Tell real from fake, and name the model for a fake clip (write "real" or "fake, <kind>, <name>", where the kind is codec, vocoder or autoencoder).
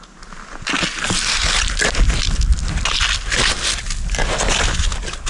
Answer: real